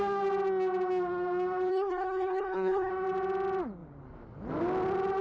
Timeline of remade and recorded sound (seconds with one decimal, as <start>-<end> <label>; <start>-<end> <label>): 0.0-1.7 recorded; 1.7-2.9 remade; 2.9-5.2 recorded

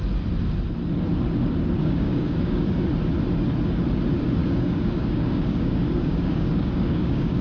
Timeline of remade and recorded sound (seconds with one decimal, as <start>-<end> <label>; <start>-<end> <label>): 0.0-1.8 recorded; 1.8-2.8 remade; 2.8-4.4 recorded; 4.4-7.4 remade

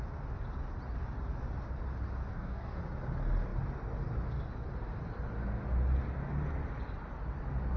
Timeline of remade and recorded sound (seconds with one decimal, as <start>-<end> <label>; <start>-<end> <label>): 0.0-2.3 recorded; 2.3-2.8 remade; 2.8-7.8 recorded

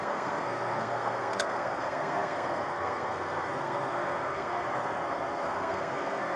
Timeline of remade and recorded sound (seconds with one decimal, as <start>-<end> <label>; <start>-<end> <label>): 0.0-6.4 remade

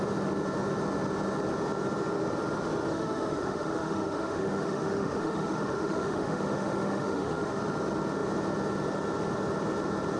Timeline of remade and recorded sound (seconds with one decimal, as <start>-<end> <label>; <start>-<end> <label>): 0.0-2.9 recorded; 2.9-7.6 remade; 7.6-10.2 recorded

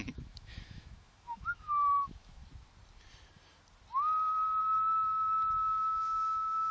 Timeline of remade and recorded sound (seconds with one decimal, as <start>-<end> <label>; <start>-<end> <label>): 0.0-2.4 remade; 2.4-4.6 recorded; 4.6-6.7 remade